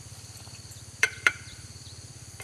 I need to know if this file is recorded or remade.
remade